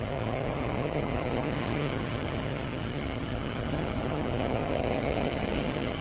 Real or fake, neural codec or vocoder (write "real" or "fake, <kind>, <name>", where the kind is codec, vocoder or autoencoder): fake, vocoder, HiFi-GAN